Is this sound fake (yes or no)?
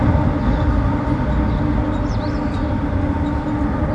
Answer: no